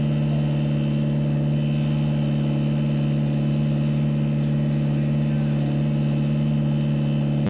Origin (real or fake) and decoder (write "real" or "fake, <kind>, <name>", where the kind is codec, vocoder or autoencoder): real